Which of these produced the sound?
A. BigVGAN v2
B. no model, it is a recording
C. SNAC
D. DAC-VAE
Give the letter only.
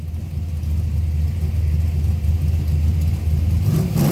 B